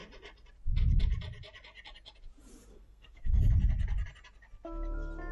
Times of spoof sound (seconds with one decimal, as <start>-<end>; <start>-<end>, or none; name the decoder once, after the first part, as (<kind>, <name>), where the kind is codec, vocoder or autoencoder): 2.7-3.4 (codec, SNAC)